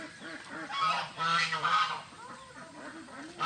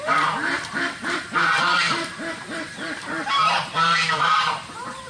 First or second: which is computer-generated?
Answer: second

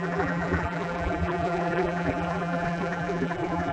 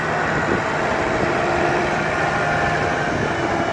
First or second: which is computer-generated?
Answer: first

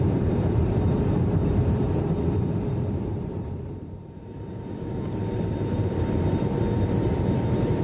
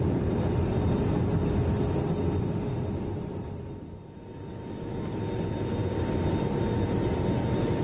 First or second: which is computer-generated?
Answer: first